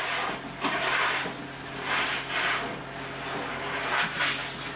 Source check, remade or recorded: recorded